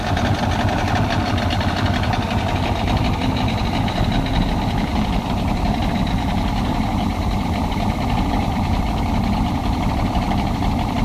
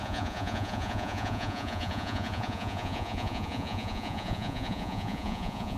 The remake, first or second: second